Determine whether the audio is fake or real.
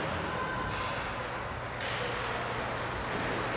real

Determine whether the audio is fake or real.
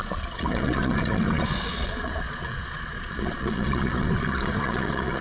fake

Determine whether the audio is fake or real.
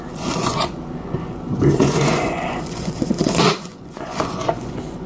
fake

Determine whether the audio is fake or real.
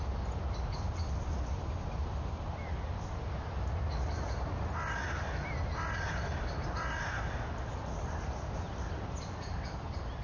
real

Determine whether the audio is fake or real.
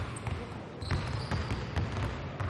real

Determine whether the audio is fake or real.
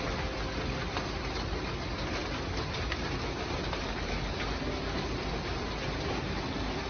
real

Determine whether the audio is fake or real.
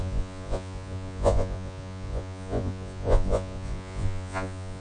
fake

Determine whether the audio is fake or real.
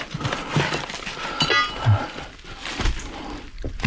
real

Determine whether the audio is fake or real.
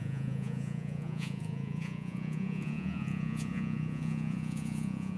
fake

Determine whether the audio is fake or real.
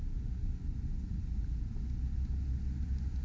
real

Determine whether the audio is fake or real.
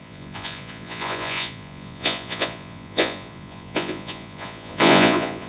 fake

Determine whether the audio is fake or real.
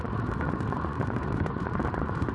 fake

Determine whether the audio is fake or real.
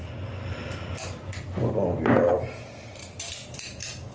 real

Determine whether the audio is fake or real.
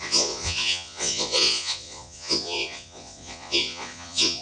fake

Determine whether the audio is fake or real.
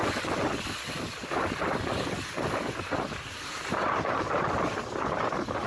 real